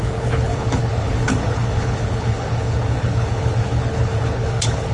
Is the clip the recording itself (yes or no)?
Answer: no